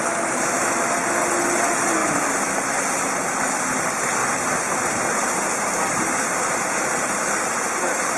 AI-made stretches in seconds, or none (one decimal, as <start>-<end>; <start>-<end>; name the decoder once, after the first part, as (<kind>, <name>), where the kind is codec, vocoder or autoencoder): none